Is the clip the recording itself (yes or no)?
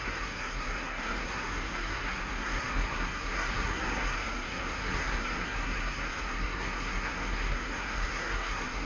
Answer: no